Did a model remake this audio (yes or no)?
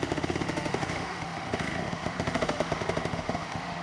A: yes